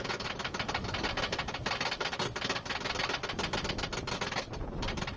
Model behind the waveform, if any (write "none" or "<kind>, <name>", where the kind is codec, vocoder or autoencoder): none